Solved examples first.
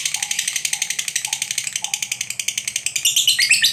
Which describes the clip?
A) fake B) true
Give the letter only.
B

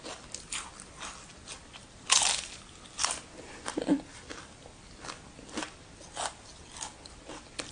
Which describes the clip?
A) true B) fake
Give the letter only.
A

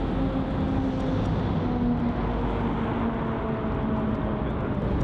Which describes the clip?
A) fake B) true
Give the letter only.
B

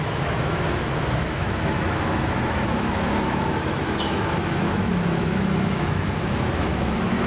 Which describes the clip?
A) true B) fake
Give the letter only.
B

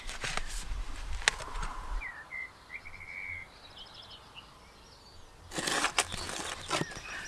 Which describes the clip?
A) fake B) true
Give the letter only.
B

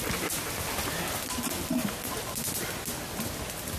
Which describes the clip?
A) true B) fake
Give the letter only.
A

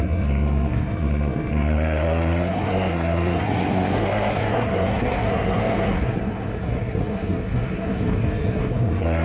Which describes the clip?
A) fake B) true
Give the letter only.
A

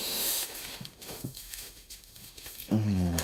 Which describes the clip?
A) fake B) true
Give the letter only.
A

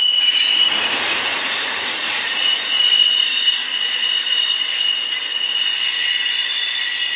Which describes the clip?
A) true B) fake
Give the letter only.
B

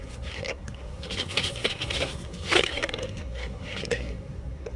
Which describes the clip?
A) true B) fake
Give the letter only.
B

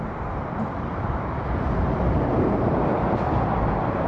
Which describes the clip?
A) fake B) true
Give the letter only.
A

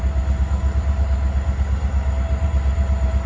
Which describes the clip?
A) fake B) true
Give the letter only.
A